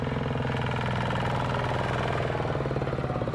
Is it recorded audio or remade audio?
recorded